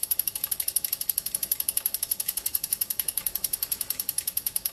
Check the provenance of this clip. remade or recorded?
remade